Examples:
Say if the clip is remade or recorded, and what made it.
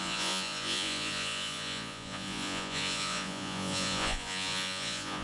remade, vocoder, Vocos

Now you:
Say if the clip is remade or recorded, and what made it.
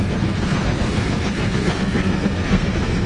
remade, codec, SNAC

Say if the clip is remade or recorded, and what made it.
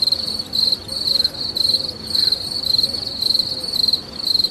recorded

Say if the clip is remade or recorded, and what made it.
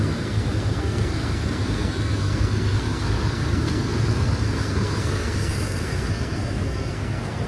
remade, codec, SNAC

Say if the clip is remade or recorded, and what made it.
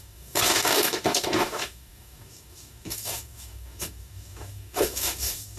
remade, codec, DAC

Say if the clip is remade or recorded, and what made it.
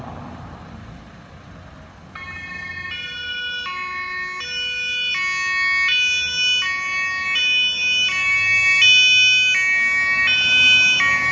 recorded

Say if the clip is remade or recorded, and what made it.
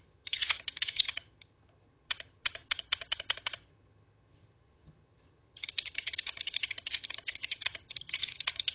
remade, vocoder, HiFi-GAN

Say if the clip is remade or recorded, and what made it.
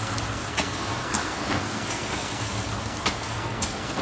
remade, codec, SNAC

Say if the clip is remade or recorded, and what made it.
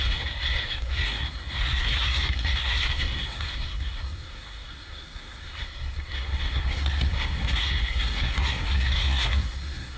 remade, codec, SNAC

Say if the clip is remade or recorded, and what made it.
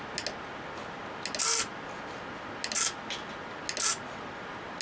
recorded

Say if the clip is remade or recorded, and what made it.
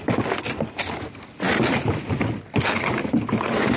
recorded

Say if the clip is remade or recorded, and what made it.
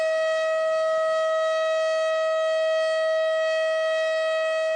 recorded